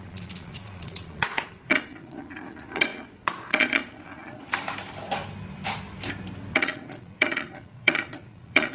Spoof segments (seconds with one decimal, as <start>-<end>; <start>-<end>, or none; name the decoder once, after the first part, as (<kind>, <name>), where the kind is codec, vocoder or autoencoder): 0.0-4.4 (vocoder, Vocos); 6.5-8.7

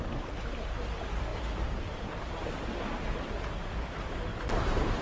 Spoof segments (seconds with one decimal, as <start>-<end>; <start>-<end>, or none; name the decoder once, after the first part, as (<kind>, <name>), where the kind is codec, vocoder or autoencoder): 1.3-2.2 (vocoder, BigVGAN v2); 4.3-5.0

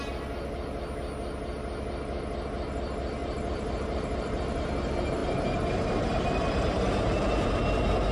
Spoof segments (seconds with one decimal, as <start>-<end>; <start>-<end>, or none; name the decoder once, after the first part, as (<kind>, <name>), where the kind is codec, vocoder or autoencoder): 3.2-4.6 (vocoder, BigVGAN v2); 5.2-7.5

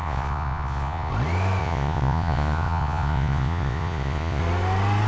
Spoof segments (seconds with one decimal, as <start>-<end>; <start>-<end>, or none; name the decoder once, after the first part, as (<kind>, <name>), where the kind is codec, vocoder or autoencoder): 0.0-1.1 (vocoder, Vocos); 1.6-4.4

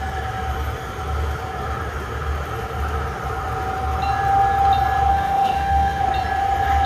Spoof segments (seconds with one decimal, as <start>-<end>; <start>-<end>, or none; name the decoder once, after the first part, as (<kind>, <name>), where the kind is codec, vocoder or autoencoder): 5.1-6.0 (autoencoder, DAC-VAE)

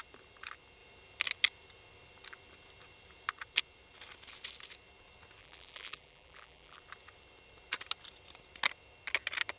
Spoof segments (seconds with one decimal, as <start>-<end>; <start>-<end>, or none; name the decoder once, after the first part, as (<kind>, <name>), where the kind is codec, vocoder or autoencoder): 5.4-6.8 (vocoder, BigVGAN v2)

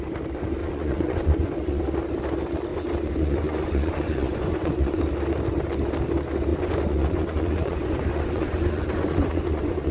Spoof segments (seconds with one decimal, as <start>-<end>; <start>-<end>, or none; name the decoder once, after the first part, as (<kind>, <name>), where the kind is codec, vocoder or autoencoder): 0.6-1.8 (vocoder, Vocos); 2.7-5.0; 6.5-9.9